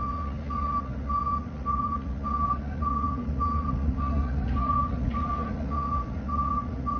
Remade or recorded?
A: remade